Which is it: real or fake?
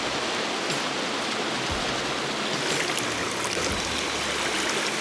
real